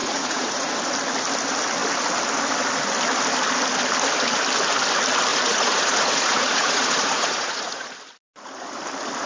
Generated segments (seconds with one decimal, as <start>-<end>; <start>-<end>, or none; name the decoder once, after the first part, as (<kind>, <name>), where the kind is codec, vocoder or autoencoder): 0.0-0.7 (vocoder, Vocos); 5.3-7.9